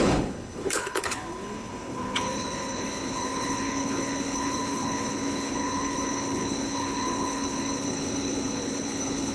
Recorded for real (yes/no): no